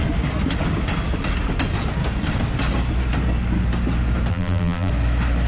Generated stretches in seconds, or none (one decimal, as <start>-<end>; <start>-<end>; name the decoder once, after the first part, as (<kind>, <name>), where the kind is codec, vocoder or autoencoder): 4.3-4.9 (vocoder, BigVGAN v2)